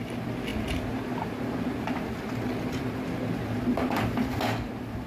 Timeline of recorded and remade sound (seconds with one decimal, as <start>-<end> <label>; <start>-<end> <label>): 0.0-5.1 recorded